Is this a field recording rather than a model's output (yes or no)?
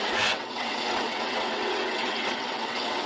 no